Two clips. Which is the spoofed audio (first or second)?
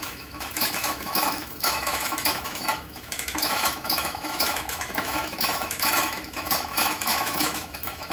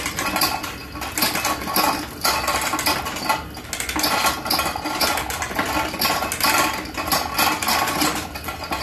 first